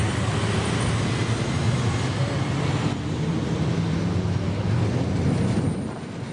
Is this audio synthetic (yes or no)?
no